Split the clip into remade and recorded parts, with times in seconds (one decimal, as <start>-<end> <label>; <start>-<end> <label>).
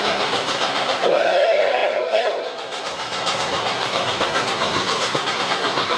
0.0-6.0 remade